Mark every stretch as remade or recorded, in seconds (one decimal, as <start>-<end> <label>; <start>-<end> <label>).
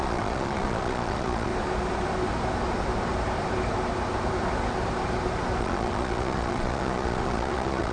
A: 0.0-1.5 remade; 1.5-5.6 recorded; 5.6-7.9 remade